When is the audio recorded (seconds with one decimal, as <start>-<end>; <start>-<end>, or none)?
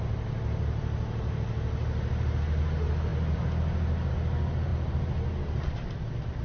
0.0-6.4